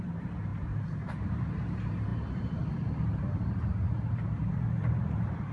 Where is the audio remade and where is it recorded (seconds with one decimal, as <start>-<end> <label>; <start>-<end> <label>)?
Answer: 0.0-5.5 remade